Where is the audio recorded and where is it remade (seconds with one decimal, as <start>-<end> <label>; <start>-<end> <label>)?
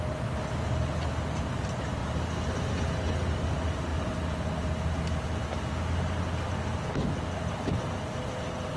0.0-8.8 recorded